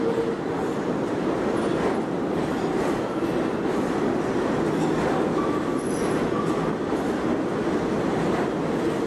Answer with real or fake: real